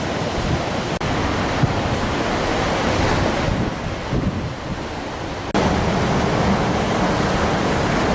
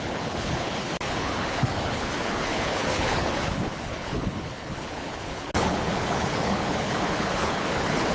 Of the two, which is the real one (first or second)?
first